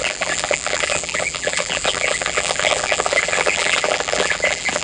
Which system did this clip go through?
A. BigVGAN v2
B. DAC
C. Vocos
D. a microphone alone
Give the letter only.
A